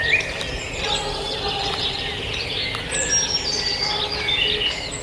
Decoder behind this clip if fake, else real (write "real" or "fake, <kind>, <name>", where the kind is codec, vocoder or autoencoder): real